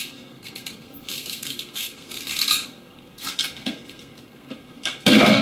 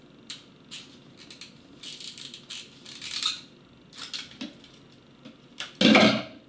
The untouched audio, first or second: second